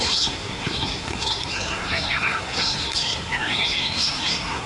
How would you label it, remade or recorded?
remade